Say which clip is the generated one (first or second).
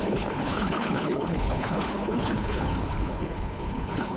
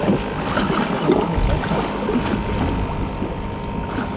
first